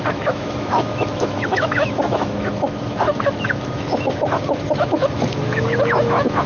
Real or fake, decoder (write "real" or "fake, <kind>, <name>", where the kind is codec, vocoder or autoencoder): fake, autoencoder, DAC-VAE